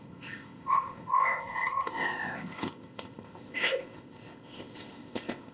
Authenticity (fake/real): fake